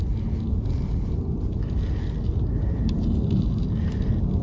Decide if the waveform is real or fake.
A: real